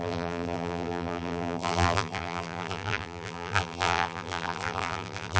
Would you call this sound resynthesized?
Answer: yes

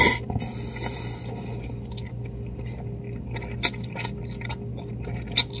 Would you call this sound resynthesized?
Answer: no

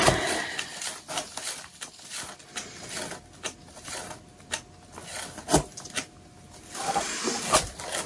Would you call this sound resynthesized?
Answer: no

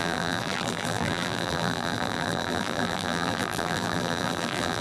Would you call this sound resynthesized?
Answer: yes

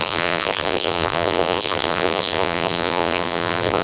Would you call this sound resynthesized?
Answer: yes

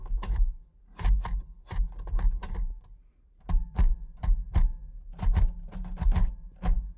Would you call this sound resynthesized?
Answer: yes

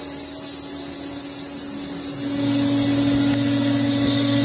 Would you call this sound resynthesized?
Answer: no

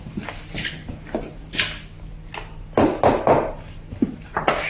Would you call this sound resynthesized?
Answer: no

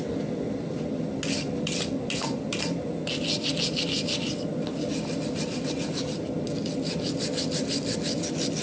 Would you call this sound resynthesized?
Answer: no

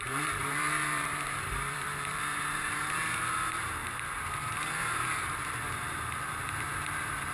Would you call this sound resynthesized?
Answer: yes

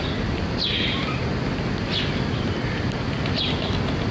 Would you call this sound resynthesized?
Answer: no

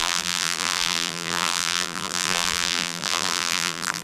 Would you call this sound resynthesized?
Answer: yes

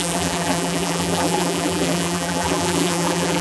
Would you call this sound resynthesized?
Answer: yes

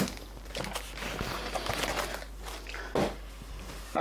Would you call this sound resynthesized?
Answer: no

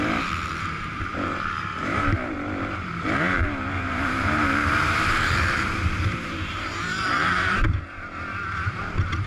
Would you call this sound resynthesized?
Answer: yes